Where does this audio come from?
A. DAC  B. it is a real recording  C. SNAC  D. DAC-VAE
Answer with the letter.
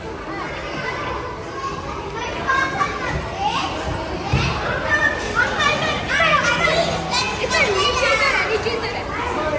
B